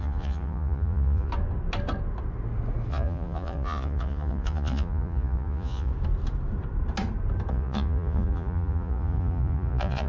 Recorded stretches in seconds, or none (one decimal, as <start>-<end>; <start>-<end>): 1.3-2.9; 5.9-7.5